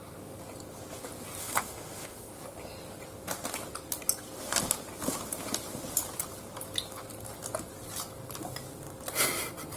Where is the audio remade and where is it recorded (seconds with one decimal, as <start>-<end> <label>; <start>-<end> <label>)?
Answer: 0.0-1.4 recorded; 1.4-2.3 remade; 2.3-9.8 recorded